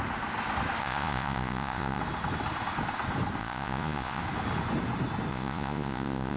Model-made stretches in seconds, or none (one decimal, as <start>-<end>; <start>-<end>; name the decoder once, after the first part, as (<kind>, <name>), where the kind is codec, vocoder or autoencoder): 0.8-2.0 (vocoder, Vocos); 3.4-4.2; 5.3-6.4